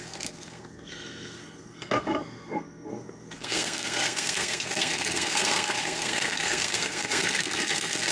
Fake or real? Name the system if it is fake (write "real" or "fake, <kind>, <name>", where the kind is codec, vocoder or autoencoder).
fake, codec, SNAC